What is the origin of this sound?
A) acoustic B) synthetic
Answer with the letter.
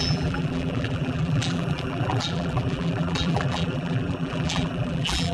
B